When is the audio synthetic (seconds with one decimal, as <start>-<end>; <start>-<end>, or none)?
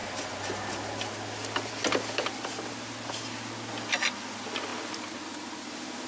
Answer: none